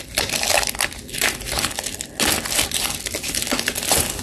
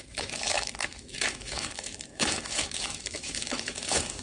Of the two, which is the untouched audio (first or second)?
first